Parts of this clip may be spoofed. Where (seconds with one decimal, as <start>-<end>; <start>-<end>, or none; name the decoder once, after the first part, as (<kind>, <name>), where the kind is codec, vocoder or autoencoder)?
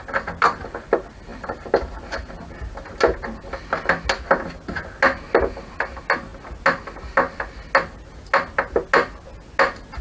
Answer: 1.3-2.8 (vocoder, BigVGAN v2)